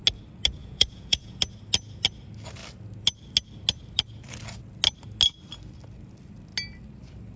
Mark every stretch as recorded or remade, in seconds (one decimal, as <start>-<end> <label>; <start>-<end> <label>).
0.0-0.6 recorded; 0.6-1.4 remade; 1.4-7.4 recorded